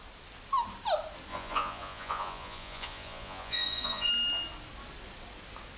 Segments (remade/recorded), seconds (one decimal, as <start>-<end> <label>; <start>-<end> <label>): 0.0-1.3 recorded; 1.3-4.1 remade; 4.1-5.8 recorded